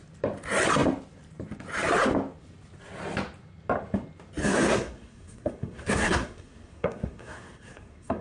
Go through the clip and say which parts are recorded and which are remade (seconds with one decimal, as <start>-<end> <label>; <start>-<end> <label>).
0.0-4.4 recorded; 4.4-8.2 remade